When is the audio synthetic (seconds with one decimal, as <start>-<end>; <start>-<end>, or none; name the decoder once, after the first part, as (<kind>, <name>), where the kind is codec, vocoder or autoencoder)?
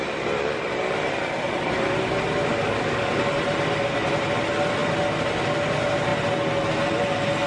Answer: 2.5-3.1 (codec, DAC)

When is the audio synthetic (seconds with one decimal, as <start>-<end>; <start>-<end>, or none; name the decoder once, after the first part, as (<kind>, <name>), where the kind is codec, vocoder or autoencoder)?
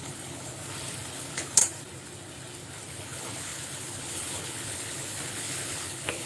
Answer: 0.0-0.5 (codec, HILCodec); 1.1-1.6; 2.9-6.3